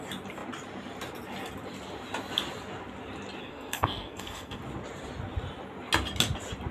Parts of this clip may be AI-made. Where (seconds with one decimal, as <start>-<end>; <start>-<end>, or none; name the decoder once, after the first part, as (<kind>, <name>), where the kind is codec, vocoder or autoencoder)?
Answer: 3.4-4.6 (codec, SNAC)